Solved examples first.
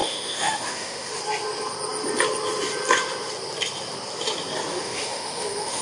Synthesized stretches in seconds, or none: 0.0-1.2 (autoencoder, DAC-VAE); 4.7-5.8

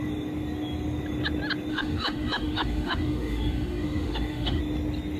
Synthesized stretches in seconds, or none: 1.7-4.6 (autoencoder, DAC-VAE)

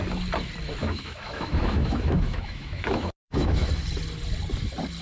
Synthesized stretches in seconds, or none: 0.8-3.7 (autoencoder, DAC-VAE)

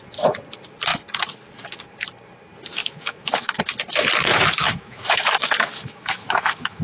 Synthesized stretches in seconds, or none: 2.8-3.6 (autoencoder, DAC-VAE); 4.3-6.8

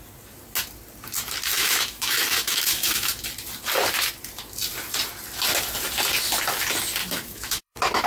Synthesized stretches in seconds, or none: 1.5-3.2 (autoencoder, DAC-VAE); 7.0-8.1

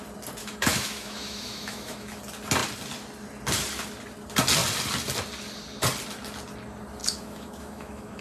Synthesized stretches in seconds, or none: 0.4-2.2 (autoencoder, DAC-VAE); 7.0-8.2

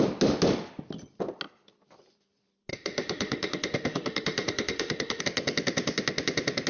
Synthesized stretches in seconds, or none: 2.7-5.2 (autoencoder, DAC-VAE)

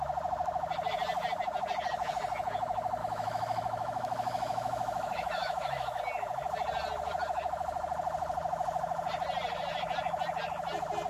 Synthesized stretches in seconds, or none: 3.0-6.0 (autoencoder, DAC-VAE)